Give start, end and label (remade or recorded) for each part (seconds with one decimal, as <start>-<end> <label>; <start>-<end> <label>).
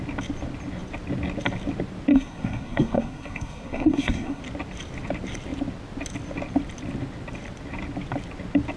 0.0-2.1 recorded; 2.1-4.4 remade; 4.4-8.8 recorded